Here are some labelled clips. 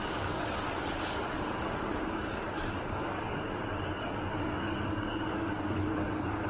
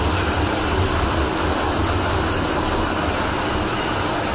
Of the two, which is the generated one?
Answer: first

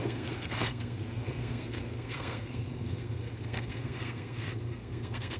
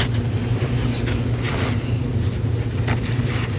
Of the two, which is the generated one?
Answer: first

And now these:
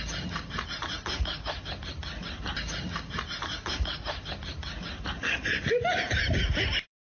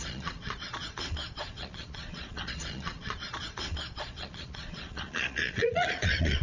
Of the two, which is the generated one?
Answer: second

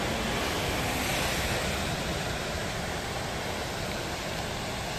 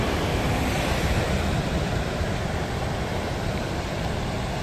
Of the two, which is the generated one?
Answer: second